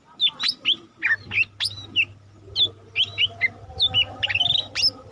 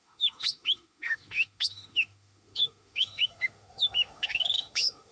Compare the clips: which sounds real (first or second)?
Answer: first